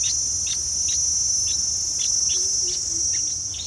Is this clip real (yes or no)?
yes